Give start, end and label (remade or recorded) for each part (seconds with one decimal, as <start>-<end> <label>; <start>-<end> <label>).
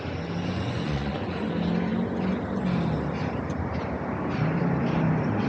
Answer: 0.0-0.5 recorded; 0.5-1.5 remade; 1.5-5.5 recorded